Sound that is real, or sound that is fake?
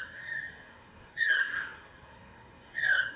fake